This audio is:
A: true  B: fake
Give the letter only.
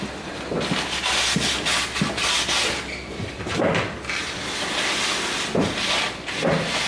A